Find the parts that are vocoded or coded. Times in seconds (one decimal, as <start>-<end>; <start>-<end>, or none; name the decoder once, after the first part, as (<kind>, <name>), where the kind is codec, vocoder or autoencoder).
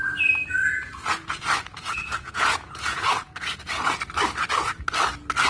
0.6-3.9 (vocoder, Vocos)